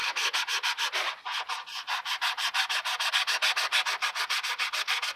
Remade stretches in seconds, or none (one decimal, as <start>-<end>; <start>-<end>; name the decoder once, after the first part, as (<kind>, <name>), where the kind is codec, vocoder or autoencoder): none